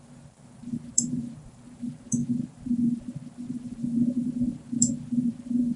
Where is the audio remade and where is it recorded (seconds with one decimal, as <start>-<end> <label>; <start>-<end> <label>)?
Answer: 0.0-5.8 remade